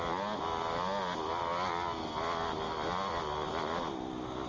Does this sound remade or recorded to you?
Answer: recorded